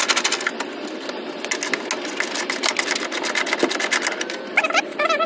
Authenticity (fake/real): real